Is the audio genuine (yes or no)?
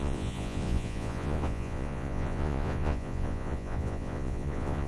no